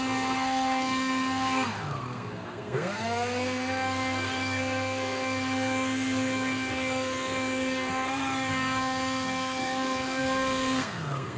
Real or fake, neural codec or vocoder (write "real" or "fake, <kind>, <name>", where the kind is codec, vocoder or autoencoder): fake, codec, SNAC